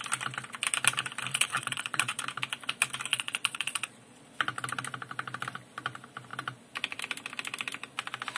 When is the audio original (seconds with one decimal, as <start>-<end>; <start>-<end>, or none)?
0.0-1.3; 2.2-3.1; 4.3-8.4